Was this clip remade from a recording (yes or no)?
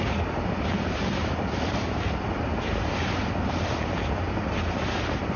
no